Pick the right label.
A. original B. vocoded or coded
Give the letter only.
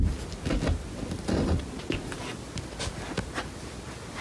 A